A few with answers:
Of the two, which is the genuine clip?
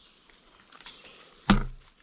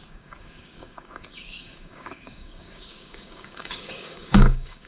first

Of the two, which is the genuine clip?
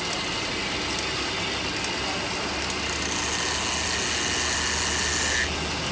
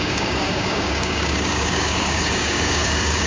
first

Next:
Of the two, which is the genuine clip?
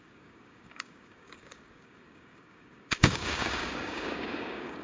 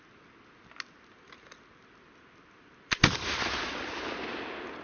second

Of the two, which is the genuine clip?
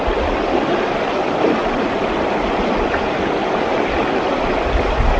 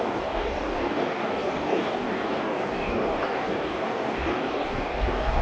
first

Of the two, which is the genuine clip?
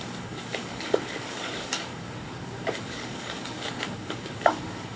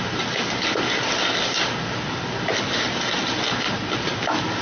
second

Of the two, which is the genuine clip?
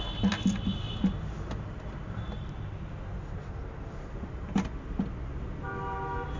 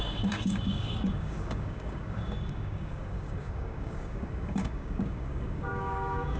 first